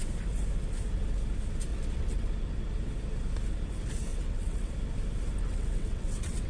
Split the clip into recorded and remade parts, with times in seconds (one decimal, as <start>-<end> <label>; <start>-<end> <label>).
0.0-1.7 recorded; 1.7-2.3 remade; 2.3-4.1 recorded; 4.1-4.7 remade; 4.7-5.4 recorded; 5.4-6.5 remade